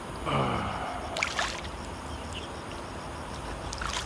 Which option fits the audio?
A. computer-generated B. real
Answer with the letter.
B